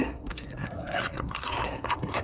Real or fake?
fake